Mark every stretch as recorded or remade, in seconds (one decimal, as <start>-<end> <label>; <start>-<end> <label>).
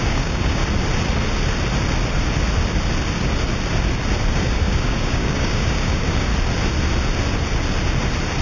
0.0-0.6 remade; 0.6-4.3 recorded; 4.3-6.3 remade; 6.3-8.4 recorded